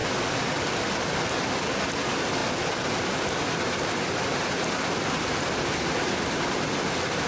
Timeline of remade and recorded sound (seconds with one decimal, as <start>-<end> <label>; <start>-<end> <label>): 0.0-7.3 recorded